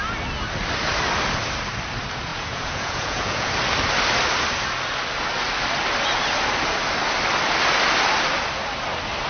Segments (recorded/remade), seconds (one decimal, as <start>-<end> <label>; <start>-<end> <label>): 0.0-2.3 recorded; 2.3-3.5 remade; 3.5-9.3 recorded